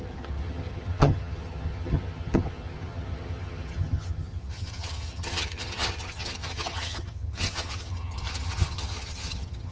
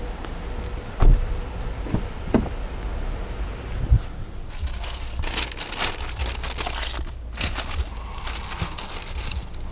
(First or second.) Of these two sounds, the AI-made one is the first